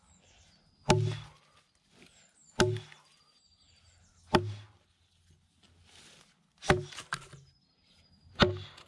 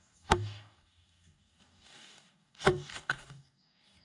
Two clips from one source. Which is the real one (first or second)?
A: first